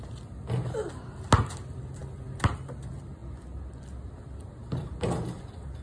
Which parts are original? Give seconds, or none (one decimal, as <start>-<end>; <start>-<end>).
0.0-2.0; 2.5-5.8